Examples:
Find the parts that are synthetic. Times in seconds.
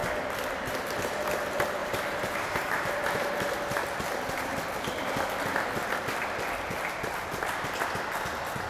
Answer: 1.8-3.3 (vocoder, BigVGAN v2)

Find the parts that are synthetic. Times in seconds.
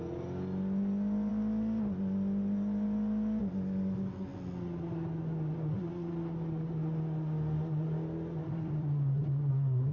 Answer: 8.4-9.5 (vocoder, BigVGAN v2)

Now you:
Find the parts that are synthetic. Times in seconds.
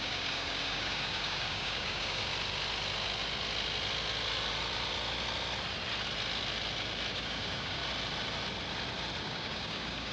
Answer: 0.0-2.3 (codec, DAC); 7.1-7.8; 9.2-10.1